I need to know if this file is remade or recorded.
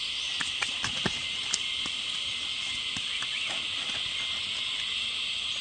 recorded